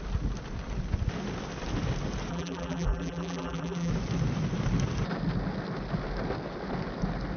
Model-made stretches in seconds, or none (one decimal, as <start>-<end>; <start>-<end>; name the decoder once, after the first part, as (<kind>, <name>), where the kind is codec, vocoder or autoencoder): 2.3-3.9 (vocoder, BigVGAN v2)